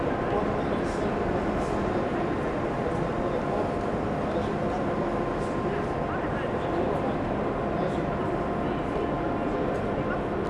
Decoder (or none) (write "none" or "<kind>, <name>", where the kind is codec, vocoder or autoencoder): none